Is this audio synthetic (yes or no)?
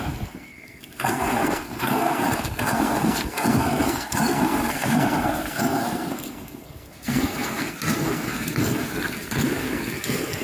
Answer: yes